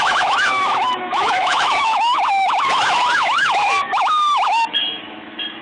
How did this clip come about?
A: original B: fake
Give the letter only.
B